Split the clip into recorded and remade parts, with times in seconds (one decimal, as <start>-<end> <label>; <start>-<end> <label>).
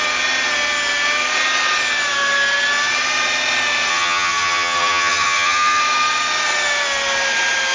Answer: 0.0-3.9 recorded; 3.9-5.8 remade; 5.8-7.7 recorded